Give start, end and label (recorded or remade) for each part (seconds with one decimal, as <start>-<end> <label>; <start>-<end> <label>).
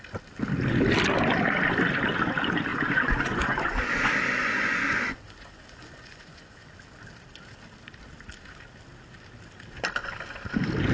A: 0.0-2.7 recorded; 2.7-3.9 remade; 3.9-4.4 recorded; 4.4-6.7 remade; 6.7-10.9 recorded